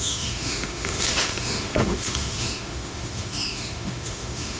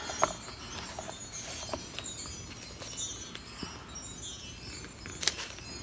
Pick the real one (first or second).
second